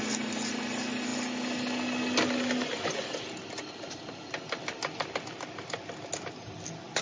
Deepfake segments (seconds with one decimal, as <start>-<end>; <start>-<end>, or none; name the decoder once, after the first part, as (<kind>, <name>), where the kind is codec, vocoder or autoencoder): none